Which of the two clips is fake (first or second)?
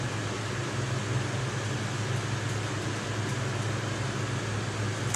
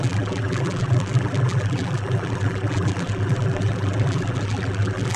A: second